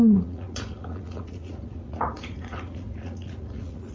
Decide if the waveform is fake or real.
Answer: fake